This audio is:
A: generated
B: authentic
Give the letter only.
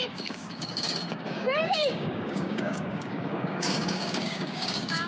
A